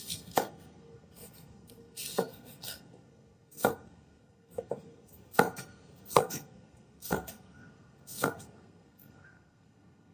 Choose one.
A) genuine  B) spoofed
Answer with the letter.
B